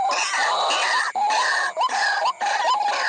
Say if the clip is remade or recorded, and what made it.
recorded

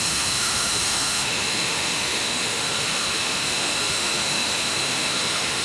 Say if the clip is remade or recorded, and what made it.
remade, autoencoder, DAC-VAE